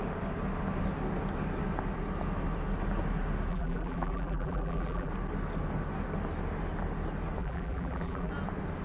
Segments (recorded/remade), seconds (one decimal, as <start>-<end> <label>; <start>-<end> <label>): 0.0-3.5 recorded; 3.5-5.1 remade; 5.1-7.4 recorded; 7.4-8.3 remade; 8.3-8.8 recorded